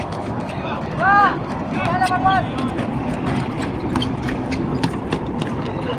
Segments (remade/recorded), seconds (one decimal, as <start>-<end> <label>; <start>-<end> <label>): 0.0-1.8 remade; 1.8-4.0 recorded; 4.0-4.7 remade; 4.7-5.5 recorded; 5.5-6.0 remade

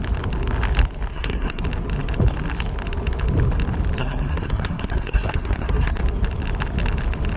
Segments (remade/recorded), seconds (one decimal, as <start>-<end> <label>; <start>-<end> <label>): 0.0-1.1 recorded; 1.1-1.6 remade; 1.6-4.0 recorded; 4.0-6.0 remade; 6.0-7.4 recorded

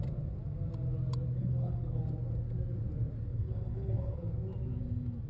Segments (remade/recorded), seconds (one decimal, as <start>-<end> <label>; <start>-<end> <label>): 0.0-1.4 recorded; 1.4-2.0 remade; 2.0-3.3 recorded; 3.3-4.3 remade; 4.3-5.3 recorded

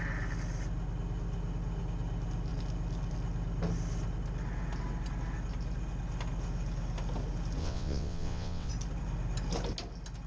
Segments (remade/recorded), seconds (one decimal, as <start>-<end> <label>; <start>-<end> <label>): 0.0-7.6 recorded; 7.6-8.7 remade; 8.7-10.3 recorded

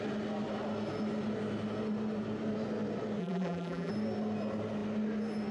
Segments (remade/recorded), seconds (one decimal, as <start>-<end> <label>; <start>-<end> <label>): 0.0-3.2 recorded; 3.2-3.9 remade; 3.9-5.5 recorded

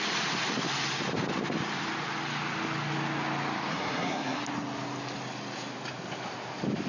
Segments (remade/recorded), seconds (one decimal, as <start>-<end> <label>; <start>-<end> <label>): 0.0-3.7 recorded; 3.7-4.4 remade; 4.4-6.9 recorded

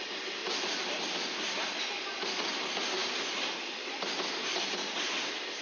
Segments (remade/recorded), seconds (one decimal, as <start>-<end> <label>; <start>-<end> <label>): 0.0-5.6 recorded

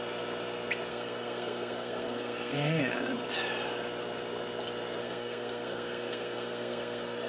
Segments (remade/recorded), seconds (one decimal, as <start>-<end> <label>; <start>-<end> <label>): 0.0-0.9 recorded; 0.9-2.8 remade; 2.8-5.0 recorded; 5.0-7.3 remade